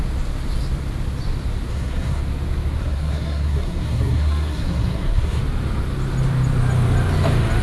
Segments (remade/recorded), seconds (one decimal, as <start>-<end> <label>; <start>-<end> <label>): 0.0-1.7 recorded; 1.7-2.2 remade; 2.2-2.8 recorded; 2.8-5.4 remade; 5.4-7.6 recorded